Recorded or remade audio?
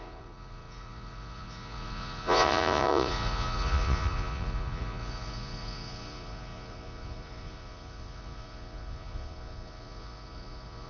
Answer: remade